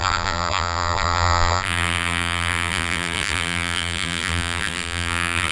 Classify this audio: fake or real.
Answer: fake